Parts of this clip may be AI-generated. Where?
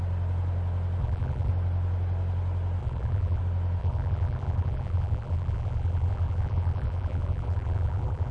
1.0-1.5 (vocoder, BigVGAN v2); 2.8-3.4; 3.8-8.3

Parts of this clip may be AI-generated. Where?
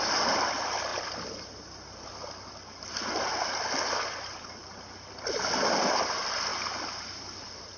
none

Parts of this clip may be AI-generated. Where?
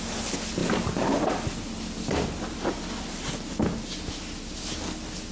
none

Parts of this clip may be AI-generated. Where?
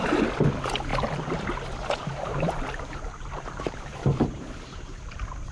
0.9-1.5 (vocoder, BigVGAN v2); 2.0-5.5